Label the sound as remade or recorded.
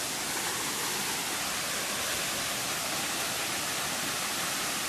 recorded